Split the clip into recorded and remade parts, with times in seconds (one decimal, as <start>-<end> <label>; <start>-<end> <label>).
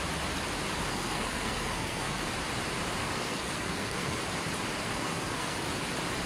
0.0-0.9 recorded; 0.9-2.3 remade; 2.3-3.0 recorded; 3.0-4.2 remade; 4.2-4.8 recorded; 4.8-5.7 remade; 5.7-6.3 recorded